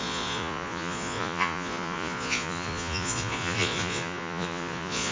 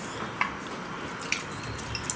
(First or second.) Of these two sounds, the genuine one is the second